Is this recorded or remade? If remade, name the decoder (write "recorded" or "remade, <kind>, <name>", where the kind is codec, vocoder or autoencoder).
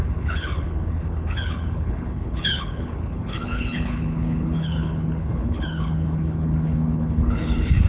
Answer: remade, codec, HILCodec